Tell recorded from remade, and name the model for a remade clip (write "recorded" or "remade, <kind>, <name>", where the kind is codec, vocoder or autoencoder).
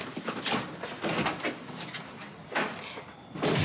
recorded